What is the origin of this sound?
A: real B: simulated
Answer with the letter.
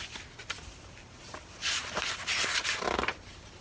A